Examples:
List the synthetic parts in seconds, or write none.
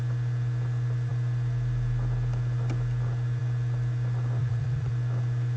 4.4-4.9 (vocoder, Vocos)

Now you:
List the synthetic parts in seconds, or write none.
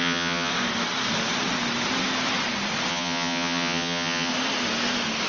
0.0-0.5 (vocoder, HiFi-GAN); 2.9-4.3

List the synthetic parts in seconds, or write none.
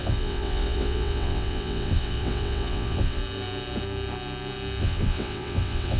0.0-3.2 (vocoder, WaveNeXt); 4.8-6.0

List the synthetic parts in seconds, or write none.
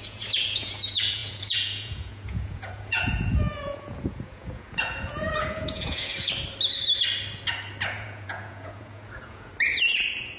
0.0-6.1 (vocoder, Vocos); 7.9-9.5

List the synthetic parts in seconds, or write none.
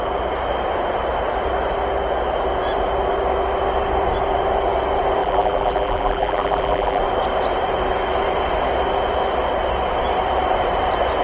5.2-7.0 (vocoder, BigVGAN v2)